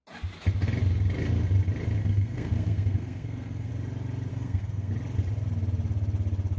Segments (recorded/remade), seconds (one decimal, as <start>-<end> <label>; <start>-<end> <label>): 0.0-2.0 recorded; 2.0-3.7 remade; 3.7-4.3 recorded; 4.3-4.9 remade; 4.9-6.6 recorded